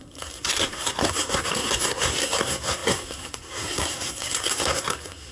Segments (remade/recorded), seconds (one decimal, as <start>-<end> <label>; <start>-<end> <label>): 0.0-5.3 remade